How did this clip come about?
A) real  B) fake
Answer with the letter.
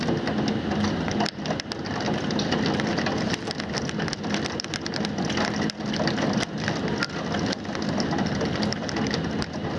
A